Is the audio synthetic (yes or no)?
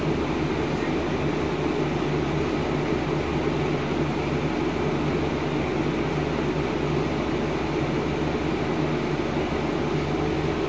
no